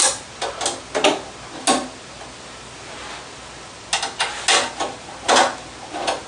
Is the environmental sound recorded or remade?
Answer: recorded